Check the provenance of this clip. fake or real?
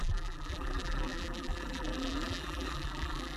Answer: fake